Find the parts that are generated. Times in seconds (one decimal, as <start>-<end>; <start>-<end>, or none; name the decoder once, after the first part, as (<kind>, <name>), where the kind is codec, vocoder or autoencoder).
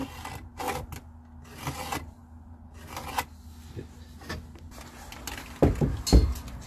none